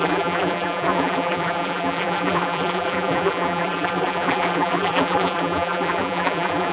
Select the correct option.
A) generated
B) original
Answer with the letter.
A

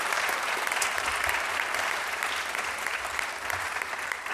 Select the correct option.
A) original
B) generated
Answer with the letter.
B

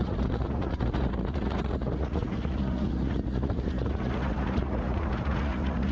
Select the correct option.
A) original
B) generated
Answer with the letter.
B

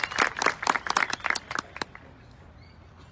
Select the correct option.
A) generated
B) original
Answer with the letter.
B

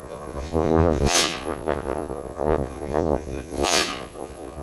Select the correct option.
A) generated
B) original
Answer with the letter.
A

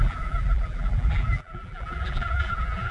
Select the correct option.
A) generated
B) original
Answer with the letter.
A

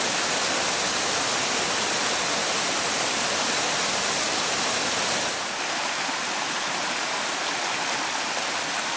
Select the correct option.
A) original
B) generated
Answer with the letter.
A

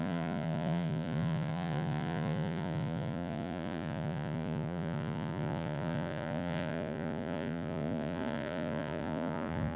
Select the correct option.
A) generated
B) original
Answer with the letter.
A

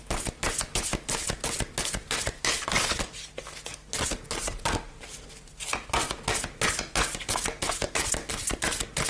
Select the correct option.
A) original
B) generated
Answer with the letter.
A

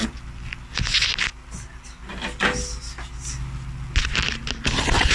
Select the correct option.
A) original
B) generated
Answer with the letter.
A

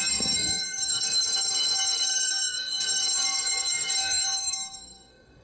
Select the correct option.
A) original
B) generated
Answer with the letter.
B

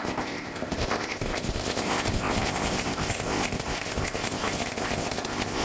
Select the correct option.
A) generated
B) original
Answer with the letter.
A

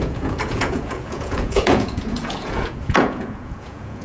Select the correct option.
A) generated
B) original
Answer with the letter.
A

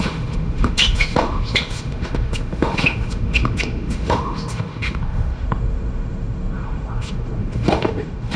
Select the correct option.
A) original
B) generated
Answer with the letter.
B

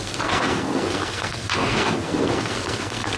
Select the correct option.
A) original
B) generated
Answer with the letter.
B